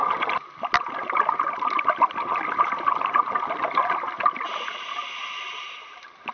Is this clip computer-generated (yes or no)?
no